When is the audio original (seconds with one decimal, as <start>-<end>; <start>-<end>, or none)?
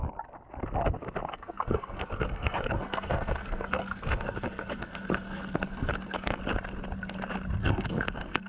0.0-1.3; 6.4-7.6